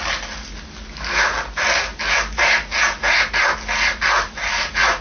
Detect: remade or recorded recorded